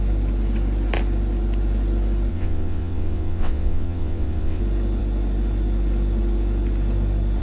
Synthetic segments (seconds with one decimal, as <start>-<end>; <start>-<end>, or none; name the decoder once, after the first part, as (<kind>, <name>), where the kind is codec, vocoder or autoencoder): 2.3-4.6 (vocoder, WaveNeXt)